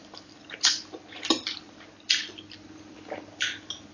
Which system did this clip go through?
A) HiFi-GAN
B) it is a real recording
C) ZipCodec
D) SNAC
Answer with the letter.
B